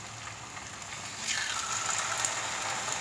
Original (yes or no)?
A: yes